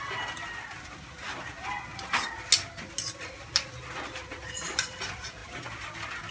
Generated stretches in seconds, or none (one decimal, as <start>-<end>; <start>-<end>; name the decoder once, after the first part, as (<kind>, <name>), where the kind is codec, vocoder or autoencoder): none